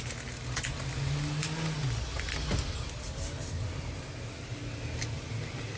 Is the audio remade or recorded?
recorded